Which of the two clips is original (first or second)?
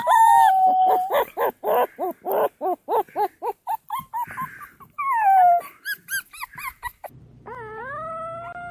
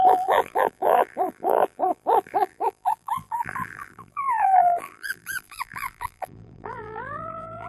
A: first